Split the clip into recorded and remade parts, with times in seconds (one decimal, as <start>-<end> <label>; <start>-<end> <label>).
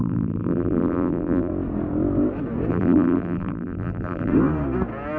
0.0-1.5 remade; 1.5-2.7 recorded; 2.7-4.3 remade; 4.3-5.2 recorded